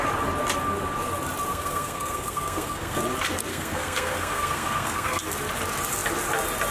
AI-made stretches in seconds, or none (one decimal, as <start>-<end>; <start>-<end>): 1.5-3.0; 3.5-5.2